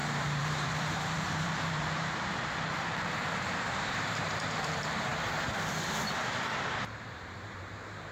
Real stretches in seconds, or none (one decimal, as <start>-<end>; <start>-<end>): 5.1-6.3